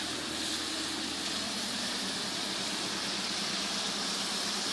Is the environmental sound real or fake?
real